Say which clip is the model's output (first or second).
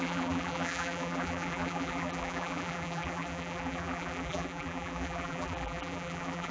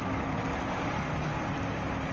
first